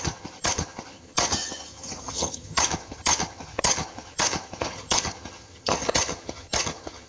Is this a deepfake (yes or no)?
yes